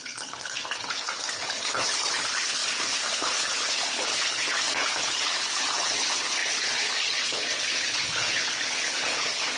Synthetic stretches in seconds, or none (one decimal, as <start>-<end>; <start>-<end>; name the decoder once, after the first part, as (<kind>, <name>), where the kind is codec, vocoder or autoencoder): 0.0-9.6 (codec, HILCodec)